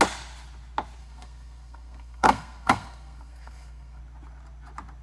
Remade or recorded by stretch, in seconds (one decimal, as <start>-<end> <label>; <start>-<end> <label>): 0.0-1.0 recorded; 1.0-4.0 remade; 4.0-5.0 recorded